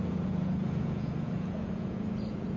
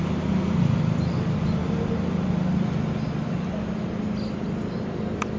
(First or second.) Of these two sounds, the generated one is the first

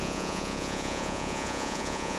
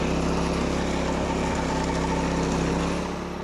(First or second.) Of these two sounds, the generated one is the first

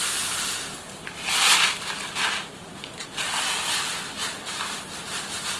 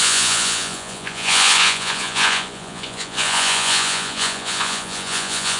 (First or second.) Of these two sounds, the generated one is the second